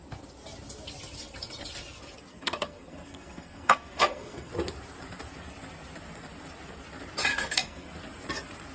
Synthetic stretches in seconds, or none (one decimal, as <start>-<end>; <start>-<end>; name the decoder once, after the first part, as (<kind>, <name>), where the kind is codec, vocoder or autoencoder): 2.3-4.5 (codec, SNAC); 7.3-7.9